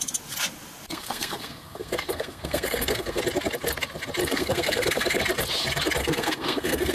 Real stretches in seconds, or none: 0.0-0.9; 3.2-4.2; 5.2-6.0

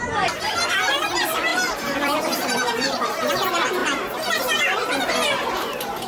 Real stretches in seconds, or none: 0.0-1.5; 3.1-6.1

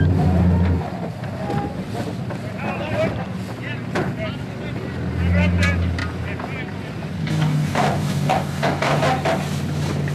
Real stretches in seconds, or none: 0.0-7.2; 9.0-10.1

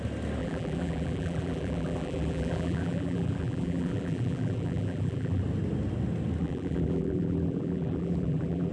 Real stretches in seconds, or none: 0.0-0.4; 5.4-6.4

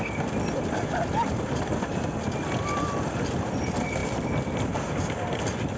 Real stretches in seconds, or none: 0.0-5.8